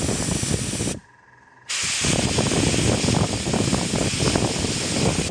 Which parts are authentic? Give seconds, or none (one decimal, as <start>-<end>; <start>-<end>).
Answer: 0.0-5.3